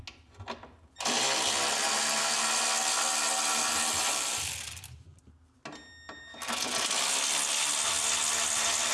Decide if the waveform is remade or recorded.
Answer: recorded